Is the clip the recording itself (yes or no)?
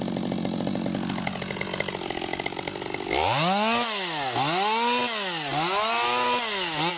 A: yes